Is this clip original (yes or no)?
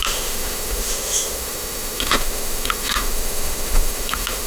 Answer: no